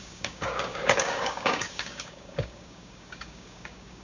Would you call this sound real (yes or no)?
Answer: no